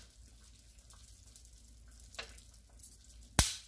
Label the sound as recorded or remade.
recorded